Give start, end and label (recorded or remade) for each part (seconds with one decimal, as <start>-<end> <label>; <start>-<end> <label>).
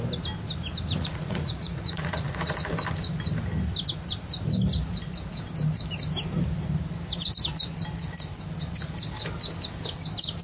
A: 0.0-1.0 recorded; 1.0-2.5 remade; 2.5-10.4 recorded